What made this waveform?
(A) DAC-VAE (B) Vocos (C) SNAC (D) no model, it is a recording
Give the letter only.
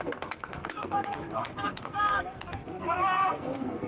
C